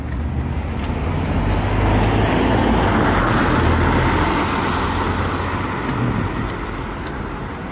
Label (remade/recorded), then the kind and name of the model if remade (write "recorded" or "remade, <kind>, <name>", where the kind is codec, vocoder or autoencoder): recorded